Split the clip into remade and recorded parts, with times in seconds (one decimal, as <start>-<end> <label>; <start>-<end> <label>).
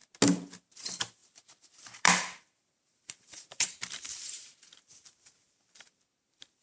0.0-0.7 recorded; 0.7-6.6 remade